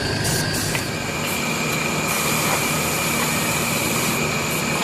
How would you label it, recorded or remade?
recorded